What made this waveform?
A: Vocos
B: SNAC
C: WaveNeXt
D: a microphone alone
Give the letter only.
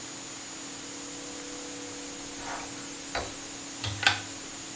D